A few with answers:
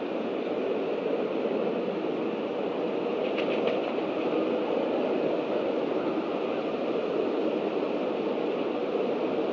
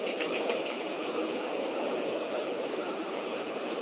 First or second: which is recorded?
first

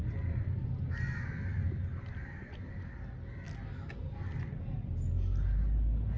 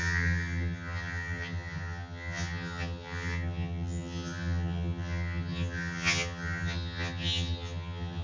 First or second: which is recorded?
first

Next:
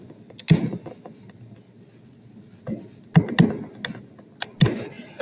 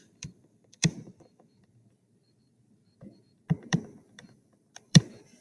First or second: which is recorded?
first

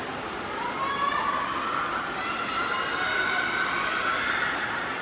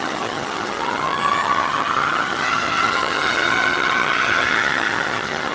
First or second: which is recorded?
first